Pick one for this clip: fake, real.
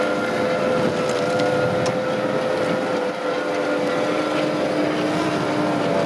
real